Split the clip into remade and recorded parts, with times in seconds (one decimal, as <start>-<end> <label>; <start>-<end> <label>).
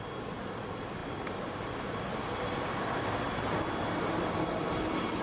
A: 0.0-5.2 recorded